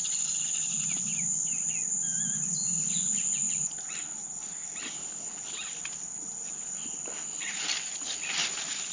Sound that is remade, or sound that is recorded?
recorded